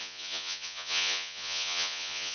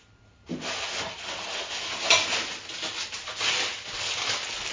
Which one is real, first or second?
second